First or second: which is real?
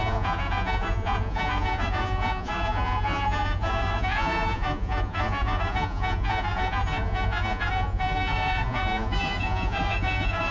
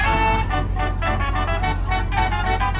second